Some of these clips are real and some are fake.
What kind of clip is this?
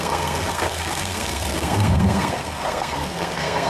fake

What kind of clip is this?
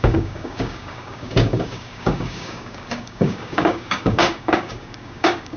fake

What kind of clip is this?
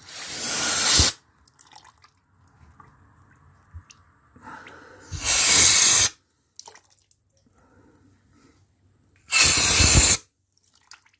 real